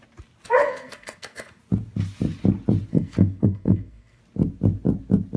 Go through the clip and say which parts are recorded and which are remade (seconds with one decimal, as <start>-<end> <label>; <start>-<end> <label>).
0.0-0.6 recorded; 0.6-1.6 remade; 1.6-2.9 recorded; 2.9-4.2 remade; 4.2-5.4 recorded